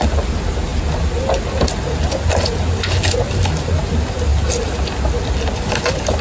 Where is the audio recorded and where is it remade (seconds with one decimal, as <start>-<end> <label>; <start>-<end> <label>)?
0.0-6.2 recorded